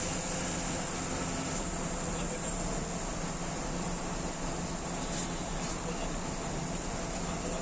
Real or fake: real